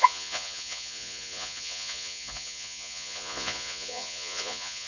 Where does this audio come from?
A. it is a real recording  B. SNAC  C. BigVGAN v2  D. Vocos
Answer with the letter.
D